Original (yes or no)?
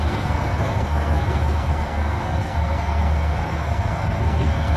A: no